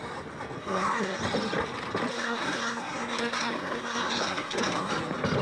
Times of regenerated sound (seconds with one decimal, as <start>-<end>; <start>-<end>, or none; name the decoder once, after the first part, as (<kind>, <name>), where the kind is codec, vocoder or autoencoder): 0.6-1.2 (codec, SNAC); 2.1-4.9